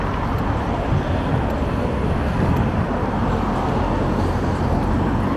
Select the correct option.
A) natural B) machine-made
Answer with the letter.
A